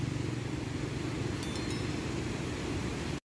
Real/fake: real